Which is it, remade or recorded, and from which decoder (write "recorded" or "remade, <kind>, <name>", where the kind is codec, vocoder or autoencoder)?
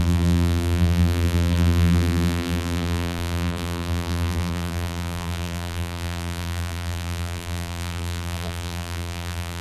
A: remade, vocoder, BigVGAN v2